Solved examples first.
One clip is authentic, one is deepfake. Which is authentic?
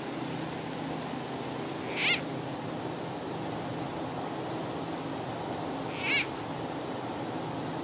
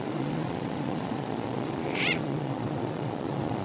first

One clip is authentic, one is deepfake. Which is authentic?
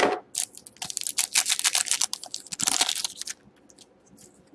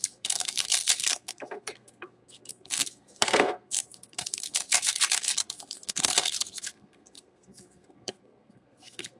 first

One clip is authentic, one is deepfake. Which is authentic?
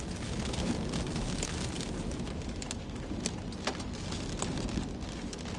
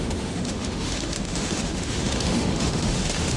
first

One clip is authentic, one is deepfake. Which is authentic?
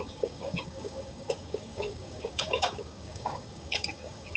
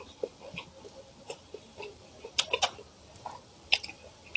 second